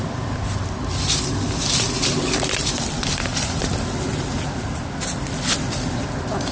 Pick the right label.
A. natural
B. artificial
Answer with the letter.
A